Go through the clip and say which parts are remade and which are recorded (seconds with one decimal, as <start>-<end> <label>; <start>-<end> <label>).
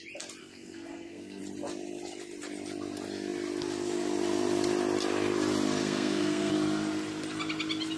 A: 0.0-0.4 recorded; 0.4-1.4 remade; 1.4-5.8 recorded; 5.8-6.5 remade; 6.5-8.0 recorded